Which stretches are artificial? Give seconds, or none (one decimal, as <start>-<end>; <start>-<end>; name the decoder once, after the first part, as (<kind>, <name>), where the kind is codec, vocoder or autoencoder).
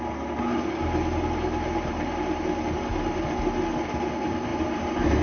4.5-5.2 (vocoder, BigVGAN v2)